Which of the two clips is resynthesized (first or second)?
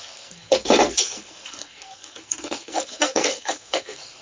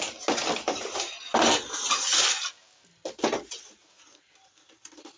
first